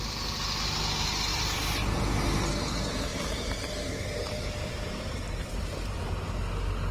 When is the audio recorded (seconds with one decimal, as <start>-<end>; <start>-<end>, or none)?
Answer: 0.0-3.1; 6.0-6.9